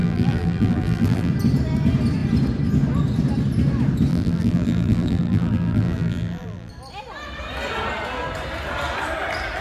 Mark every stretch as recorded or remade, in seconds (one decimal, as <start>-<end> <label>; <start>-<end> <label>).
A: 0.0-1.3 remade; 1.3-4.1 recorded; 4.1-6.7 remade; 6.7-9.6 recorded